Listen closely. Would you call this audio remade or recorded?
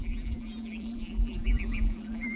remade